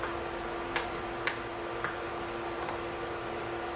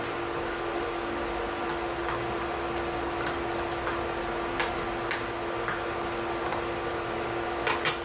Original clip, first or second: second